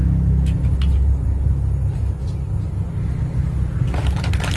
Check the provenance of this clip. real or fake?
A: real